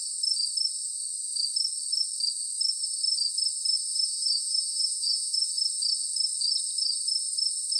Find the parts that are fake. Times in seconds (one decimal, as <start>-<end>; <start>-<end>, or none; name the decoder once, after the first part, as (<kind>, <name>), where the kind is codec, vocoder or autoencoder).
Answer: 3.9-5.5 (vocoder, BigVGAN v2)